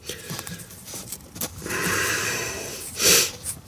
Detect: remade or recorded recorded